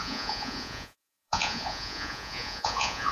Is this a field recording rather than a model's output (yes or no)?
no